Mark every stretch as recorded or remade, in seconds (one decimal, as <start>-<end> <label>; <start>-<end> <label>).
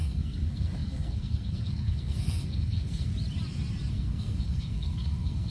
0.0-3.1 remade; 3.1-3.9 recorded; 3.9-5.5 remade